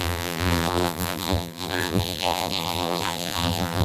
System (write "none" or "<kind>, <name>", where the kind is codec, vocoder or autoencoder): vocoder, BigVGAN v2